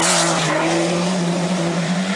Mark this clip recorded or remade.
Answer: remade